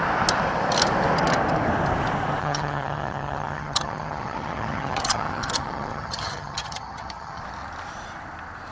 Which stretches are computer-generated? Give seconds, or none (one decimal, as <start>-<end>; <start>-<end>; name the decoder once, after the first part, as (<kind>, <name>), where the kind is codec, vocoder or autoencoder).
2.4-7.4 (vocoder, HiFi-GAN)